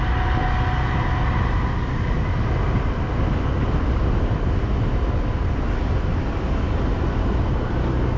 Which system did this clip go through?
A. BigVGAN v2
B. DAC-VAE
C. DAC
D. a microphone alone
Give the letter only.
D